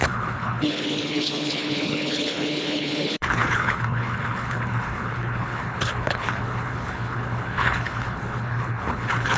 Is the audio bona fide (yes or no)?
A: no